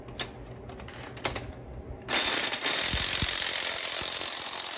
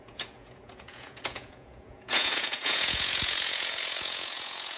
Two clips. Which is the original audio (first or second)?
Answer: first